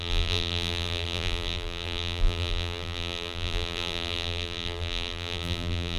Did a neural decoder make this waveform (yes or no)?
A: yes